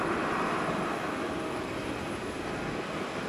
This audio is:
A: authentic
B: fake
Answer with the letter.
A